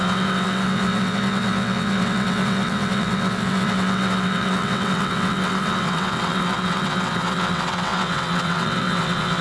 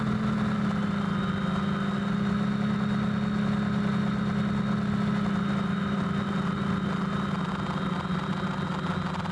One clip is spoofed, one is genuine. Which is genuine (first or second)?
second